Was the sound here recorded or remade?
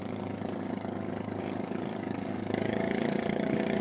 remade